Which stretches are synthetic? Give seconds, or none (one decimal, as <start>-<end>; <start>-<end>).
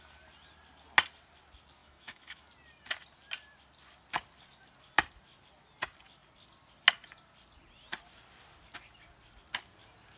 1.8-2.4